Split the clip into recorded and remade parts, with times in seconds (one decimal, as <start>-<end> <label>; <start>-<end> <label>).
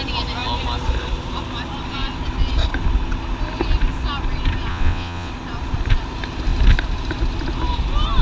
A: 0.0-4.7 recorded; 4.7-5.3 remade; 5.3-8.2 recorded